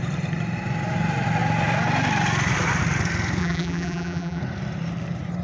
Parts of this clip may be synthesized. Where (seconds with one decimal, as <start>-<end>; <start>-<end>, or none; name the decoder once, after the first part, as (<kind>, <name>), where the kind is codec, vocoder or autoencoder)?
3.4-4.4 (vocoder, BigVGAN v2)